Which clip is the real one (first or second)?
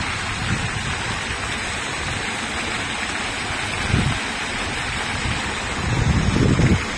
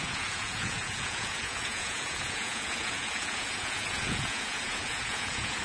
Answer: first